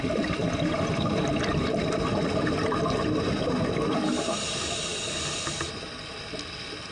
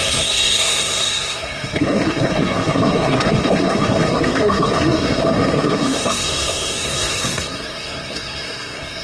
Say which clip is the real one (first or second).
first